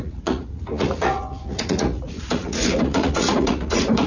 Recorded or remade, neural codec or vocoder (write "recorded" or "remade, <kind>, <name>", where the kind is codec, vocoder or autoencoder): remade, vocoder, Vocos